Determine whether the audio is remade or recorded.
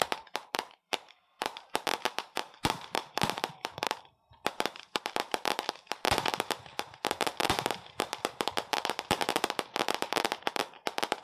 remade